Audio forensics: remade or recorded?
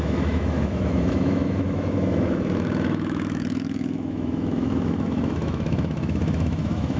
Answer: remade